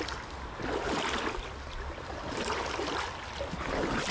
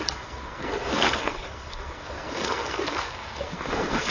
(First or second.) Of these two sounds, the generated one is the second